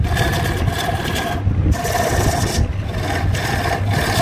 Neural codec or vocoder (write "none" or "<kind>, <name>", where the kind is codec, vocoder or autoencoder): none